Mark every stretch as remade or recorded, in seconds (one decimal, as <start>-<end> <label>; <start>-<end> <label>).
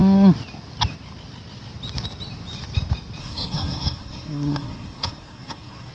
0.0-3.2 recorded; 3.2-5.9 remade